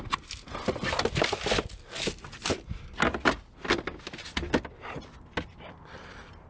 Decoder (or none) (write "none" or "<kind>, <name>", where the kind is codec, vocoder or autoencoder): none